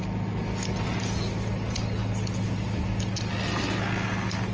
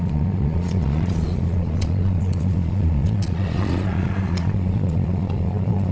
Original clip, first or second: first